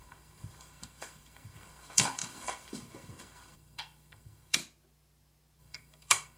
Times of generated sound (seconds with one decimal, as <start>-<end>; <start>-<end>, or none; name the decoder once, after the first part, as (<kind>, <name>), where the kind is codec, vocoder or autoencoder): 0.0-4.6 (codec, SNAC); 5.6-6.4